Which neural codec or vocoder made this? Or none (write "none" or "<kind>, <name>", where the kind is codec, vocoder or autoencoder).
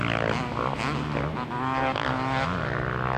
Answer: none